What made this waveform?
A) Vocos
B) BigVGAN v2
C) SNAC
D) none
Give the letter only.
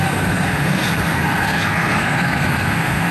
C